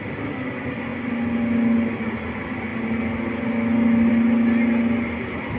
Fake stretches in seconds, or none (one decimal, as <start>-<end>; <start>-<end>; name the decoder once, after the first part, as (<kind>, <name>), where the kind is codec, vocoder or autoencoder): none